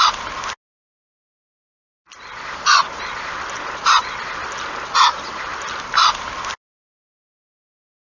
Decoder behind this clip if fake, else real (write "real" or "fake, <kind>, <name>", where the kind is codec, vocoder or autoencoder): real